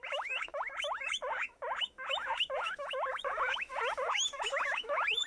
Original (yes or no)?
no